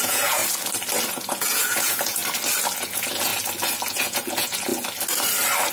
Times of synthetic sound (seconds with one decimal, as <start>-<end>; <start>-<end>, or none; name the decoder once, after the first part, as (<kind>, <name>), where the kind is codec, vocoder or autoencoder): 0.0-0.4 (vocoder, Vocos); 1.1-2.2; 2.8-3.3; 3.9-4.7

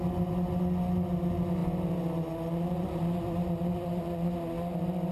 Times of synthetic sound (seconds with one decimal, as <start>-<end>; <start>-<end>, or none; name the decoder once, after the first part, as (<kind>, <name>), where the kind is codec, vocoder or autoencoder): none

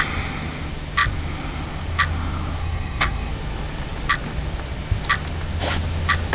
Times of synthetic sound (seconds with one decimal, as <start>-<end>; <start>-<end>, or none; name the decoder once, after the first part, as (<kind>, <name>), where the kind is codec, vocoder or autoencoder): 2.6-3.3 (codec, SNAC)

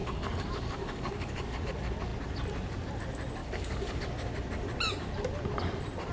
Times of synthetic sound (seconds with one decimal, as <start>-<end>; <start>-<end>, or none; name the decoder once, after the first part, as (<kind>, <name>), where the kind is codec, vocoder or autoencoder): 0.0-1.6 (codec, DAC); 3.4-4.0

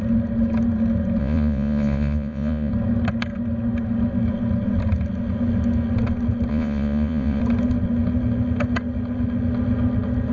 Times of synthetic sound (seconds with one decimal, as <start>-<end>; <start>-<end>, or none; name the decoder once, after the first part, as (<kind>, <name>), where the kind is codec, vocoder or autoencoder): 1.2-2.7 (vocoder, Vocos); 6.5-7.4